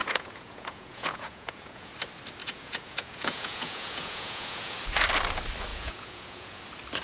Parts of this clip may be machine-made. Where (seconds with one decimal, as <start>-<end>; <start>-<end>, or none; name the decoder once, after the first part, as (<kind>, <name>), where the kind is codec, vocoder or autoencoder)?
0.0-1.9 (vocoder, Vocos); 2.4-4.8; 5.7-6.6